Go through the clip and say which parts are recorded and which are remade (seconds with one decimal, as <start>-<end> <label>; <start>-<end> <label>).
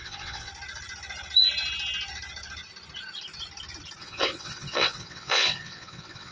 0.0-0.5 remade; 0.5-4.0 recorded; 4.0-6.3 remade